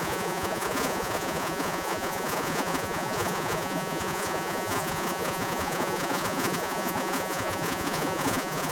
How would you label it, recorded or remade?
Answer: remade